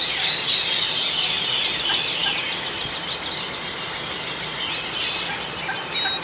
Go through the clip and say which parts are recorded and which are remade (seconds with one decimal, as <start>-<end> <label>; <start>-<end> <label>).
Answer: 0.0-6.2 recorded